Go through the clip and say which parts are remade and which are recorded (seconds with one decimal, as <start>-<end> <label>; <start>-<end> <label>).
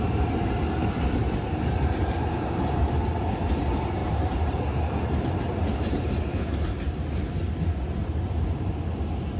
0.0-1.2 recorded; 1.2-3.0 remade; 3.0-4.0 recorded; 4.0-7.0 remade; 7.0-8.0 recorded; 8.0-8.7 remade; 8.7-9.4 recorded